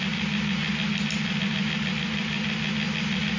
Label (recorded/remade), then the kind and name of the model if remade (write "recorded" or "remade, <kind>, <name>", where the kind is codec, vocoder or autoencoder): recorded